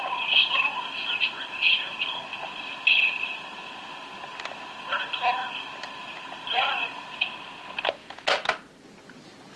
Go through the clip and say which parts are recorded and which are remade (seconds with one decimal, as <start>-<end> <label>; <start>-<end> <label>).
0.0-9.6 recorded